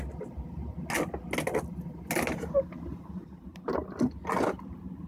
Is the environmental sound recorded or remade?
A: recorded